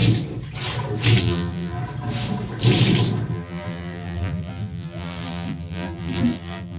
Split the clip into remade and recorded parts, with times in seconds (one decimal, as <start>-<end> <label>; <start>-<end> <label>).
0.0-1.2 recorded; 1.2-1.8 remade; 1.8-3.3 recorded; 3.3-6.8 remade